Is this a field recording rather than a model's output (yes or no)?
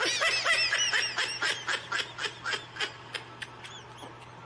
yes